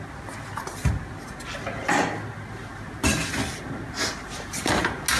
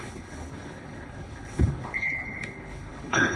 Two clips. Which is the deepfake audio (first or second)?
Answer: second